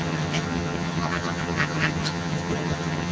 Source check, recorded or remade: remade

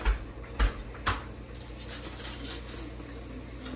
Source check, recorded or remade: recorded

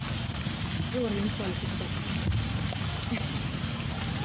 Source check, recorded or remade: recorded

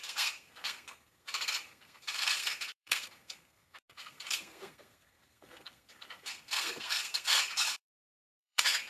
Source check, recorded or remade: remade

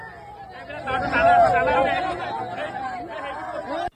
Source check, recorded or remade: recorded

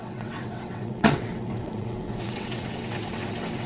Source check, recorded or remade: remade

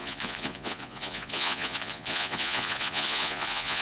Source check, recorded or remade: remade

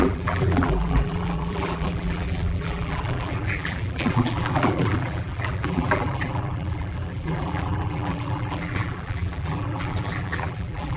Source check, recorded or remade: remade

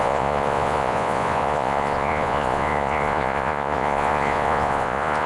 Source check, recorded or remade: remade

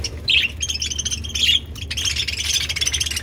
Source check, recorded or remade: recorded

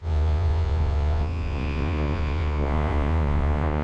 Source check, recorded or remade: remade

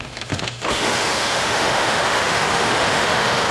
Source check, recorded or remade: remade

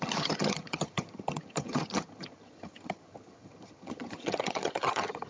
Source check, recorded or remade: remade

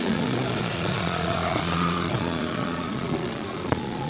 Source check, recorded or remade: remade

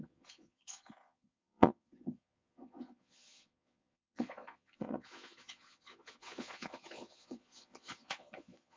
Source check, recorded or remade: remade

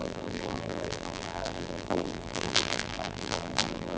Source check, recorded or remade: remade